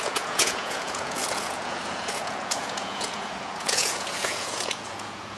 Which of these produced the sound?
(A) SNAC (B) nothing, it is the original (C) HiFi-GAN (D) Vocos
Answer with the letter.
D